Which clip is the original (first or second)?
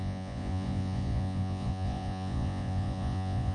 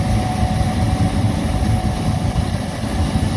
second